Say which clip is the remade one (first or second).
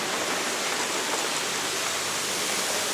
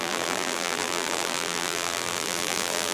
second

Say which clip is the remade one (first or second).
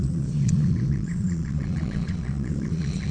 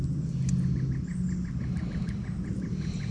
first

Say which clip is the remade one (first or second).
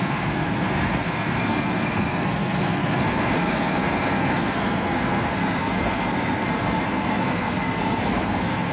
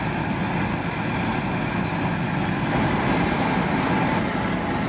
first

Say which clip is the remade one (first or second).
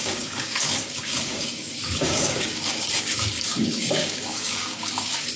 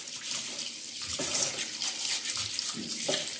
first